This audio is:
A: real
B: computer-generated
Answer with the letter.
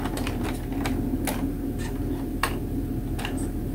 A